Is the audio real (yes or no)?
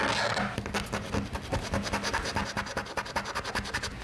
yes